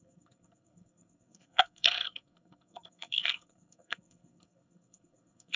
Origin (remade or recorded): remade